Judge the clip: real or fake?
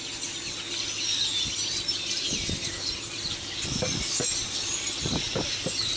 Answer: real